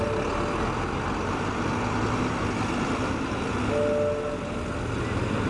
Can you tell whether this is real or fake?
real